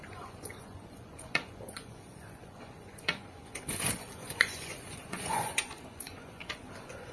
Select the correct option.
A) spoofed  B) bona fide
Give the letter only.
A